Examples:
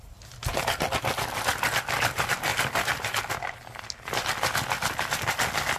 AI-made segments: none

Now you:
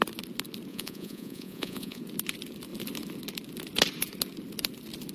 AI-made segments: 0.7-2.0